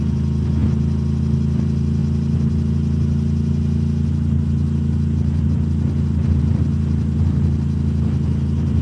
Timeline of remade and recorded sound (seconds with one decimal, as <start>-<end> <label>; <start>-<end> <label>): 0.0-8.8 recorded